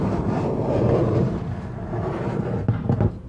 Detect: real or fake fake